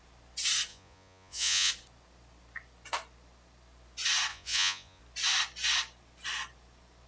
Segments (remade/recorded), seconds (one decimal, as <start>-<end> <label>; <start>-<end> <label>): 0.0-0.7 recorded; 0.7-1.7 remade; 1.7-4.3 recorded; 4.3-5.0 remade; 5.0-7.1 recorded